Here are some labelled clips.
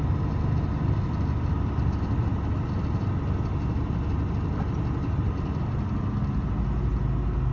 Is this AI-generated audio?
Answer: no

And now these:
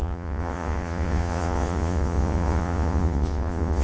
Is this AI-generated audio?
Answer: yes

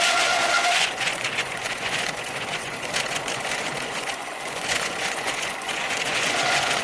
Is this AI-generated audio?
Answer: yes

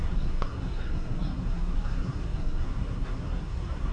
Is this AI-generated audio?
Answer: yes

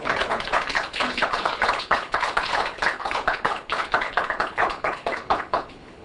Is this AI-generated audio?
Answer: yes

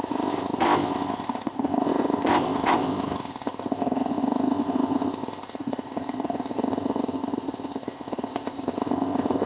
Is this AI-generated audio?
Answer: yes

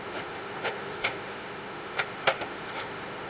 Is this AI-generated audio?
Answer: yes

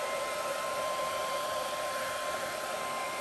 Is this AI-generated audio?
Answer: yes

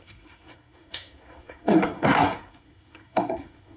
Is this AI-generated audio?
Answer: yes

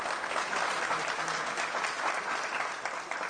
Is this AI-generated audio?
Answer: no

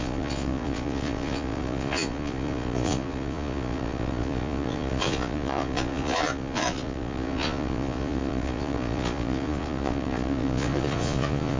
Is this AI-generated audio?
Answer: yes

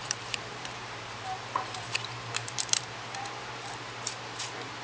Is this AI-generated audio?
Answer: yes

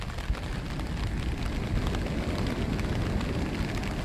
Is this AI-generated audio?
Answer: no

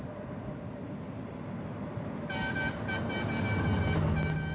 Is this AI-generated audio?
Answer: no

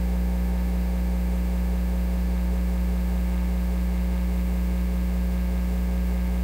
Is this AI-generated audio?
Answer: yes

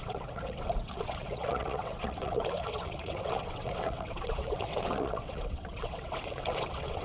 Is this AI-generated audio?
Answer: yes